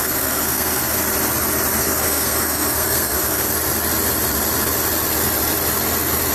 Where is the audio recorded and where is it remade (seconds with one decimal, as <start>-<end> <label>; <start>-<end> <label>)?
0.0-1.0 remade; 1.0-1.8 recorded; 1.8-3.5 remade; 3.5-6.3 recorded